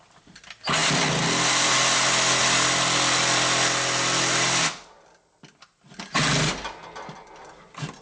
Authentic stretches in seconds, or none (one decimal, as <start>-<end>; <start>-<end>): 0.0-8.0